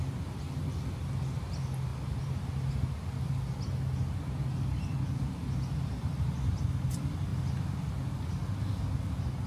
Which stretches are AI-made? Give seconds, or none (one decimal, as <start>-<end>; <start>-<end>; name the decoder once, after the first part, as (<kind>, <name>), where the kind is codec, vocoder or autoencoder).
1.9-2.7 (vocoder, BigVGAN v2)